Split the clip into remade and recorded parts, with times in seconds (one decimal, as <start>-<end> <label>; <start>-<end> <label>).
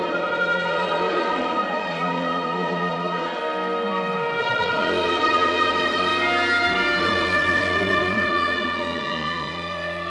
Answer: 0.0-3.4 remade; 3.4-4.4 recorded; 4.4-6.1 remade; 6.1-7.0 recorded; 7.0-10.1 remade